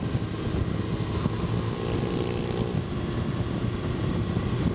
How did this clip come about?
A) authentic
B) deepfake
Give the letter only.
A